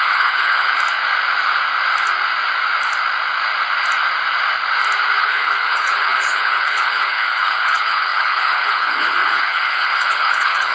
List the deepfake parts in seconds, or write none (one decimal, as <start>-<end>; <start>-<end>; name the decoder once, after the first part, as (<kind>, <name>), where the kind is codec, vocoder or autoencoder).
0.0-0.7 (codec, HILCodec); 5.2-10.7